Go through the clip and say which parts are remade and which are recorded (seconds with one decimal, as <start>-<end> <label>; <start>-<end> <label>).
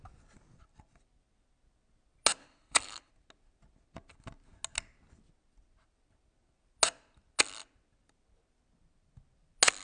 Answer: 0.0-2.4 recorded; 2.4-3.1 remade; 3.1-9.8 recorded